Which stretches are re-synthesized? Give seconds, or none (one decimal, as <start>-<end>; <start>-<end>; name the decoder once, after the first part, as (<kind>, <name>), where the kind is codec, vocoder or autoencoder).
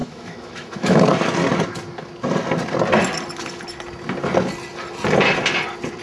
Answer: 0.0-1.0 (autoencoder, DAC-VAE)